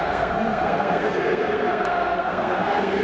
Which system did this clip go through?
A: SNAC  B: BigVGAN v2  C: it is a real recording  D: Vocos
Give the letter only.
A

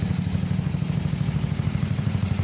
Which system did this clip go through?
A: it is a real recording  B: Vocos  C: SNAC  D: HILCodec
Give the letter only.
A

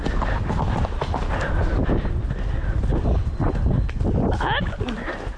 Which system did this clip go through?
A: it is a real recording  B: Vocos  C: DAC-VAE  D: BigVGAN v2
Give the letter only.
A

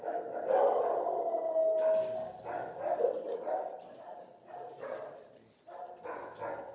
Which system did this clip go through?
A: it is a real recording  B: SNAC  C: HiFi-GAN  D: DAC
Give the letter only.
A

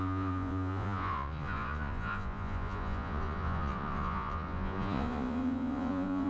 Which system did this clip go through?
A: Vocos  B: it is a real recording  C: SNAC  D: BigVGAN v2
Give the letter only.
A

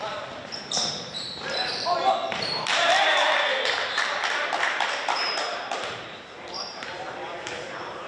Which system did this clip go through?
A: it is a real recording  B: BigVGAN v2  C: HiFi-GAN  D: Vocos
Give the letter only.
B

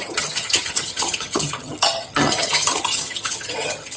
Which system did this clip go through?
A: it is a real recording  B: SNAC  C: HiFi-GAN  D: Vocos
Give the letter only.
C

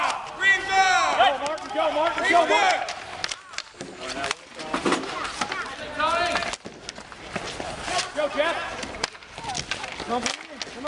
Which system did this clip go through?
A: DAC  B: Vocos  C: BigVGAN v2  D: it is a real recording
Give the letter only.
D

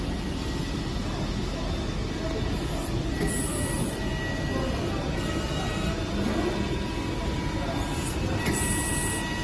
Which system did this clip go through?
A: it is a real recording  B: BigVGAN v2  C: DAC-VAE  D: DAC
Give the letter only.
A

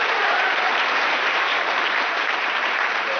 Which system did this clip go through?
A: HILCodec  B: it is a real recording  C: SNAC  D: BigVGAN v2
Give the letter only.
D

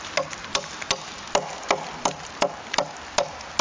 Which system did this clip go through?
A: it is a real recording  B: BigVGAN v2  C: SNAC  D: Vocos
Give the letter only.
A